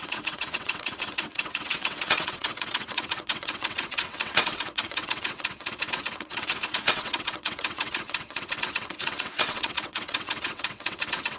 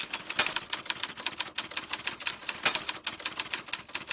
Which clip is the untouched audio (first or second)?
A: second